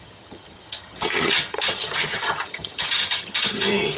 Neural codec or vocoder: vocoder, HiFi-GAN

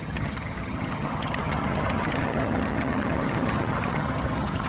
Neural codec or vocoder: vocoder, HiFi-GAN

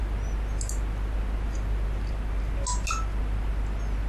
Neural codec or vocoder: none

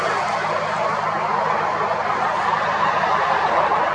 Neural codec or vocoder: none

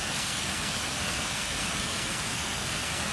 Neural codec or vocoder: codec, SNAC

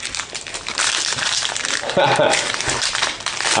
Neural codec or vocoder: vocoder, BigVGAN v2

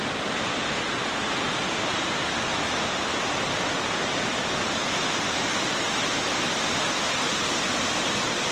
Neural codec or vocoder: none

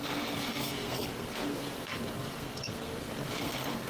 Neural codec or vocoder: codec, SNAC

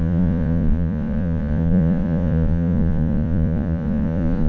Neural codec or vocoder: vocoder, Vocos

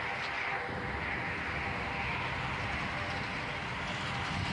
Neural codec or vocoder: none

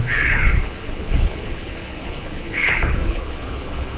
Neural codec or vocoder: codec, HILCodec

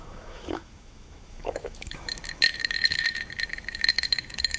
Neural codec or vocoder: autoencoder, DAC-VAE